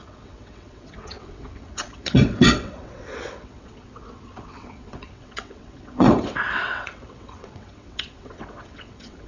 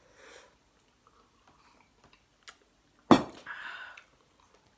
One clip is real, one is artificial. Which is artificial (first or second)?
first